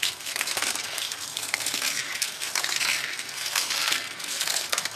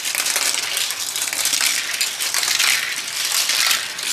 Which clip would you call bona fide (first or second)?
second